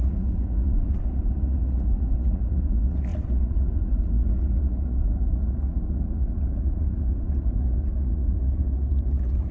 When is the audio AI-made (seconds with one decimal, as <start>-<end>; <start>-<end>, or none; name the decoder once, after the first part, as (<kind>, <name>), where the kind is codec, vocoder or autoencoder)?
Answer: 0.0-9.5 (vocoder, Vocos)